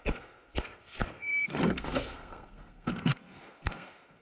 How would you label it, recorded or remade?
remade